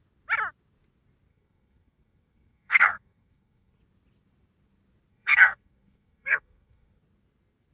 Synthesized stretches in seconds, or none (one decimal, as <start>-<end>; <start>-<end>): 1.3-3.8; 5.1-7.0